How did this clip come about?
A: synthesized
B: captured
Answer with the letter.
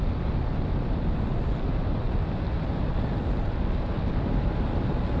B